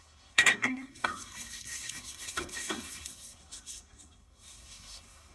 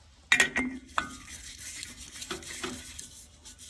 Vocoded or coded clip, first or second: first